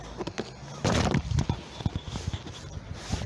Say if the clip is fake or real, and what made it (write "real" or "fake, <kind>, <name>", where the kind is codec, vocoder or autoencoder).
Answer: real